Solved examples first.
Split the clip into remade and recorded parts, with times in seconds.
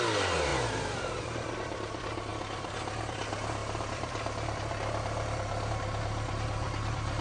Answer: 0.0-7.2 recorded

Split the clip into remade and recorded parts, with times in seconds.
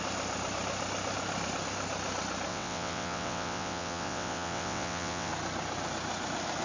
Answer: 0.0-2.5 recorded; 2.5-5.3 remade; 5.3-6.6 recorded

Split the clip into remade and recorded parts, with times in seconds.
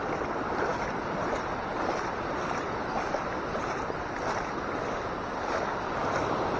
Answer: 0.0-6.6 recorded